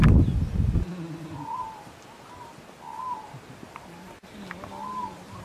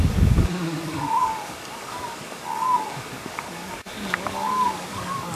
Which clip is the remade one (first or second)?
second